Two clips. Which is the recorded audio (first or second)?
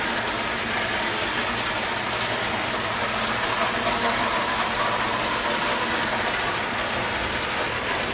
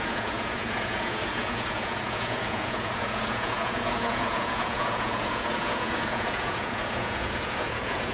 first